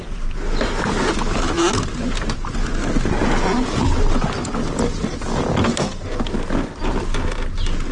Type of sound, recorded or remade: recorded